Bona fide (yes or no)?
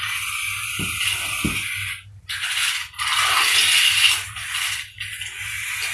yes